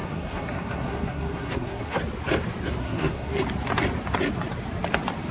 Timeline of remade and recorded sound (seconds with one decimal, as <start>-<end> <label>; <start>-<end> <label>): 0.0-2.0 remade; 2.0-2.8 recorded; 2.8-3.4 remade; 3.4-5.3 recorded

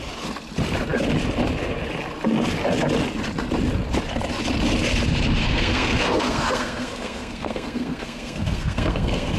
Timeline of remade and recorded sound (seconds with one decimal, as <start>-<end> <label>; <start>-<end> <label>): 0.0-5.4 recorded; 5.4-9.4 remade

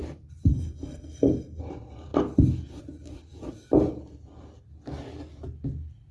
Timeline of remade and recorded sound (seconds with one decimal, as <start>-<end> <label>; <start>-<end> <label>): 0.0-0.5 recorded; 0.5-1.6 remade; 1.6-6.1 recorded

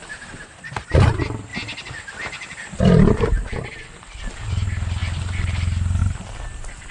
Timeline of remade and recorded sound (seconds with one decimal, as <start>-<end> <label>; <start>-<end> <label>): 0.0-6.9 recorded

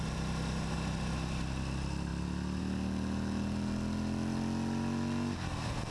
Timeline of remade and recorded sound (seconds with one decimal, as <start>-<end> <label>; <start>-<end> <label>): 0.0-5.9 recorded

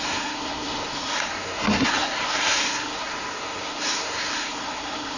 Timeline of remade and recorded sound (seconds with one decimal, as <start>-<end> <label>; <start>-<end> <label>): 0.0-5.2 remade

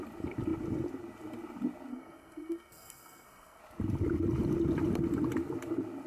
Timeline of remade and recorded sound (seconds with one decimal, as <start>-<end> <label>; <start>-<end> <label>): 0.0-1.9 recorded; 1.9-3.6 remade; 3.6-6.1 recorded